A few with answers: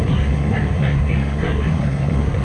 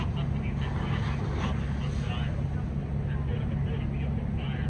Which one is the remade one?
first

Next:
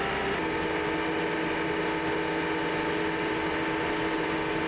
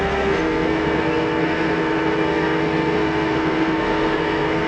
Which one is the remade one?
second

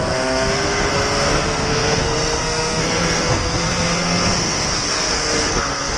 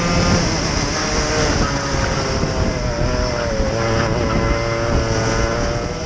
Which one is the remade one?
first